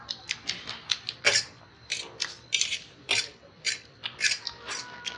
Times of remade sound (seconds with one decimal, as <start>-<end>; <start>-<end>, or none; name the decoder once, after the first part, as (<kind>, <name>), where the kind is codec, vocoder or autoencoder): 1.3-4.4 (vocoder, BigVGAN v2)